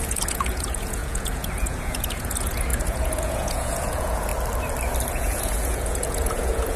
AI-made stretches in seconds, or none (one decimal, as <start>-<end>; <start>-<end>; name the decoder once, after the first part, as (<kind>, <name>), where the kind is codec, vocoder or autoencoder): 0.0-4.3 (vocoder, Vocos); 5.1-6.8